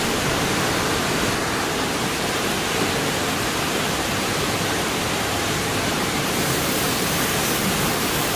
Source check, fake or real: fake